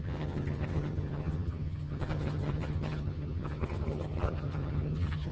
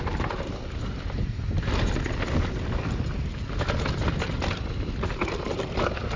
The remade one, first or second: first